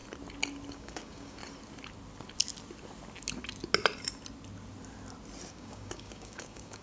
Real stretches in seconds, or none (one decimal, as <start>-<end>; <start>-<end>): 0.0-0.7; 1.4-5.5